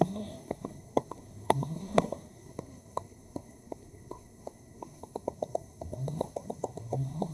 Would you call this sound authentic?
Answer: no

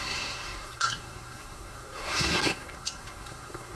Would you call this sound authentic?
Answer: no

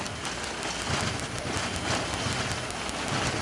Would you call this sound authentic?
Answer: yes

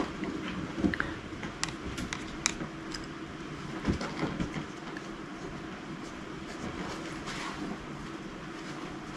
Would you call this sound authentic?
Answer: yes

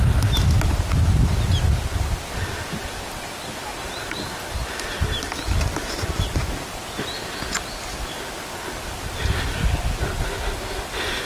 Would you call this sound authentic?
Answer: yes